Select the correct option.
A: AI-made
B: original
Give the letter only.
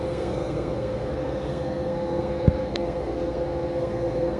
A